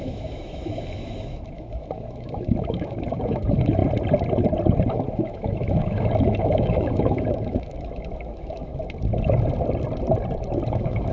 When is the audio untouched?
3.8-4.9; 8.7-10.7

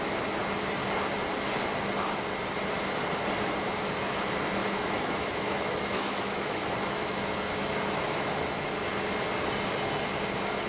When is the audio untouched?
0.0-4.6; 8.7-10.7